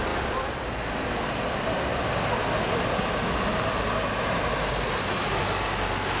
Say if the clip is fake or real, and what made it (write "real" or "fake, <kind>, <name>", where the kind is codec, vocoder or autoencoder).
real